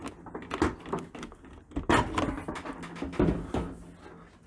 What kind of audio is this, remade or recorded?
recorded